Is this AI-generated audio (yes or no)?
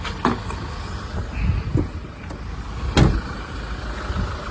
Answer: no